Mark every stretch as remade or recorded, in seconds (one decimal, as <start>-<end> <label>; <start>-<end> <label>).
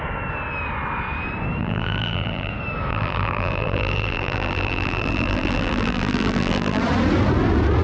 0.0-1.6 recorded; 1.6-2.5 remade; 2.5-2.9 recorded; 2.9-6.8 remade; 6.8-7.8 recorded